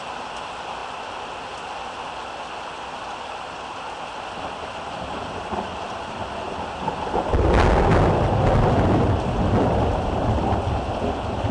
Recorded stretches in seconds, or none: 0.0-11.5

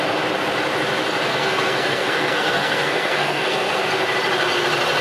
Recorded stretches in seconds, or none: 0.0-1.3; 3.8-5.0

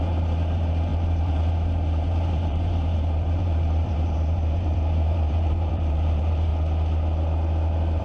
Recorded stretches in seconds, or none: 6.5-8.0

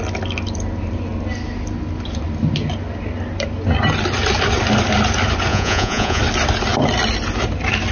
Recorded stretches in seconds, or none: 0.0-5.5; 6.2-7.9

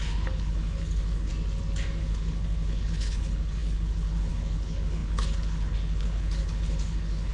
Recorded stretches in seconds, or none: 1.3-2.0

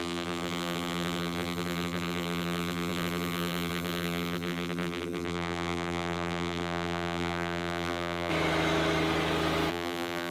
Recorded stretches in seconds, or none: 8.3-9.7